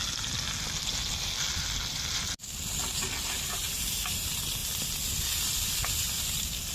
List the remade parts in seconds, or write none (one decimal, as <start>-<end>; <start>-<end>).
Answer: none